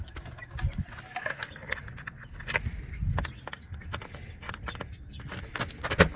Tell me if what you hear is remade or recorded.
recorded